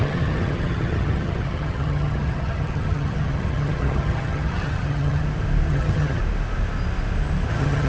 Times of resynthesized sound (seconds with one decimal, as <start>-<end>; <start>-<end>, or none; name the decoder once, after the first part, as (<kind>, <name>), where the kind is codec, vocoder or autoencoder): 0.0-5.2 (vocoder, HiFi-GAN); 5.7-6.2; 7.5-7.9